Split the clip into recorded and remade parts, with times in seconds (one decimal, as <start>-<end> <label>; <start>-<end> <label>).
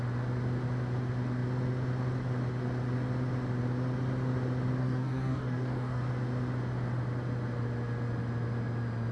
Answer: 0.0-4.8 recorded; 4.8-6.0 remade; 6.0-9.1 recorded